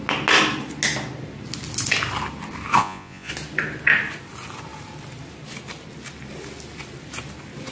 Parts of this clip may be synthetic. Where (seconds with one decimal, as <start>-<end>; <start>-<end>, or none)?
2.8-3.3